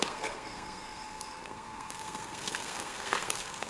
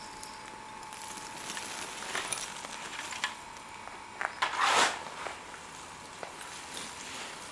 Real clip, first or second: second